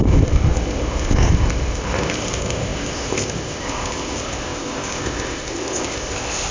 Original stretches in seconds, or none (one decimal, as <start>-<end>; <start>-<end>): none